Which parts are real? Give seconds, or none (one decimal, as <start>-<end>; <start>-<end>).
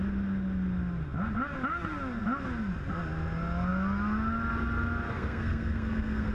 0.0-5.1